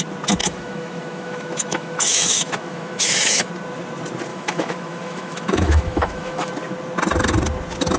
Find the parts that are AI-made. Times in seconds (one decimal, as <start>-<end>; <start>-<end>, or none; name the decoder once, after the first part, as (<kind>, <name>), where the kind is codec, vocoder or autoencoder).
0.4-3.5 (autoencoder, DAC-VAE); 4.3-6.5